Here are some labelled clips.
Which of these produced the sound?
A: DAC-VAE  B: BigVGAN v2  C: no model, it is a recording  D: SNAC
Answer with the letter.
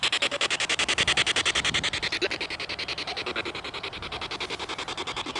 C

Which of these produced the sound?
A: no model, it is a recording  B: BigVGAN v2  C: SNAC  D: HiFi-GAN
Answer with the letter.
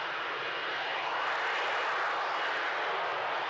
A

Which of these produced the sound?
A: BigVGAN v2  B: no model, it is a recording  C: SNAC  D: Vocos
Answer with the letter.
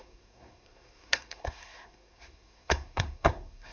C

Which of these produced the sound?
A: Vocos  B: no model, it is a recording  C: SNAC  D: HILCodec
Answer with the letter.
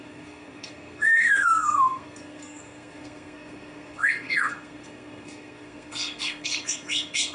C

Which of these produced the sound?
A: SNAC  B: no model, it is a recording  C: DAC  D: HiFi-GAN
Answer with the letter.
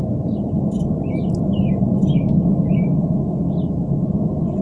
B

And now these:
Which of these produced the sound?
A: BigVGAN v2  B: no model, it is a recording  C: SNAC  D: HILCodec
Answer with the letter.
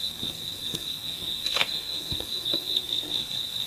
C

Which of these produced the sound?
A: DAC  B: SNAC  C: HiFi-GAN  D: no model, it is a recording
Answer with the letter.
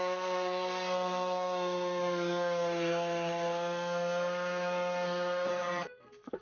B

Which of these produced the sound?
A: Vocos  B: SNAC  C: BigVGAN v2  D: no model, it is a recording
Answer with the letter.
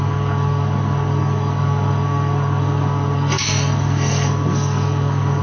B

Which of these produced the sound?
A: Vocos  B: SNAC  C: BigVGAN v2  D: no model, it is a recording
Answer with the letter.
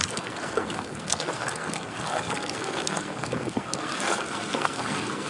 B